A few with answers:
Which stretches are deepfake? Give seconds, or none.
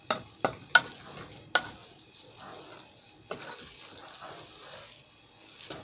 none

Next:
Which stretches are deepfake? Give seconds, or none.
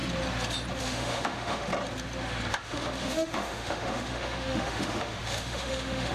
0.8-1.7 (autoencoder, DAC-VAE); 2.5-6.1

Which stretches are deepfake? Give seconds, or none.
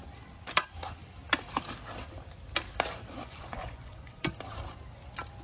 3.2-4.2 (vocoder, Vocos)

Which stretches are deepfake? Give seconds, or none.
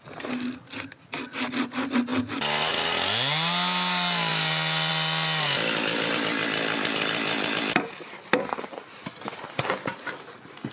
none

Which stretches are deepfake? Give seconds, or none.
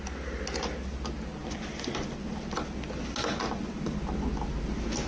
none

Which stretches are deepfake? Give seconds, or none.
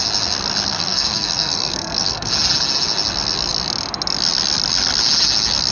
0.7-2.3 (codec, SNAC)